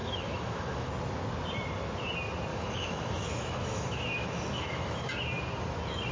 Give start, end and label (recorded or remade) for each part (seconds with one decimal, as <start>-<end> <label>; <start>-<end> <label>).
0.0-0.9 remade; 0.9-2.5 recorded; 2.5-5.1 remade; 5.1-6.1 recorded